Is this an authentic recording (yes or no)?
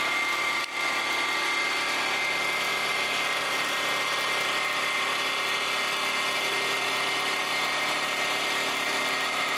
yes